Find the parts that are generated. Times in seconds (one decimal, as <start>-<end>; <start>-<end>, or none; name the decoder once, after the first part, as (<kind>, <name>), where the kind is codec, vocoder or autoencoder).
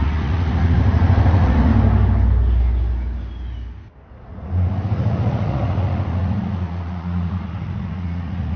0.0-1.7 (vocoder, Vocos); 4.1-8.6